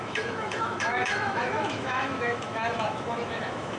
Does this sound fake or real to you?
fake